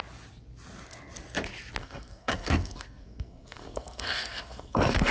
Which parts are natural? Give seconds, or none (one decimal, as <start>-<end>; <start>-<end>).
0.0-1.8